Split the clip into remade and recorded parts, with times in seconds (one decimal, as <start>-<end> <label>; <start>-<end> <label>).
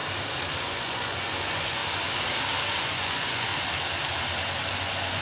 0.0-0.6 recorded; 0.6-1.8 remade; 1.8-2.8 recorded; 2.8-3.5 remade; 3.5-4.7 recorded; 4.7-5.2 remade